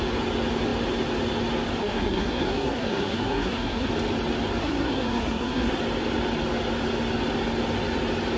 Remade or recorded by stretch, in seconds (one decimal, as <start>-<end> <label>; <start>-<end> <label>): 0.0-1.8 recorded; 1.8-3.9 remade; 3.9-4.6 recorded; 4.6-5.8 remade; 5.8-8.4 recorded